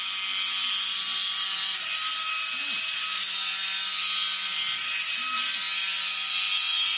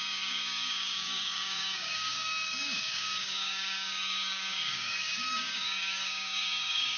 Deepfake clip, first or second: second